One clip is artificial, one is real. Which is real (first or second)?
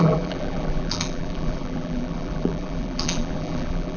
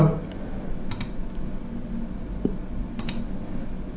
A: second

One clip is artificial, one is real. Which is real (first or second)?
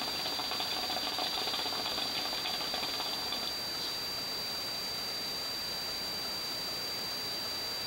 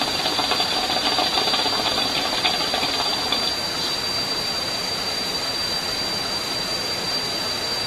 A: first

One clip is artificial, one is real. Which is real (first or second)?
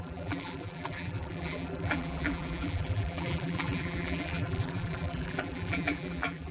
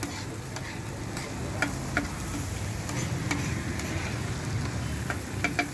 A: second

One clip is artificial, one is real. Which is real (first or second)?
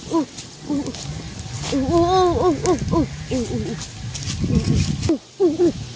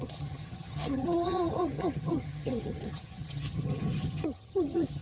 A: first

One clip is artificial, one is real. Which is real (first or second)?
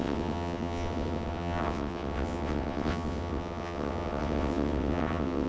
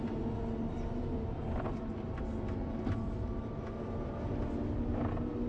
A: second